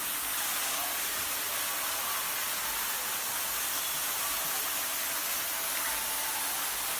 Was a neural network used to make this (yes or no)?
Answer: no